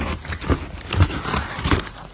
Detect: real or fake real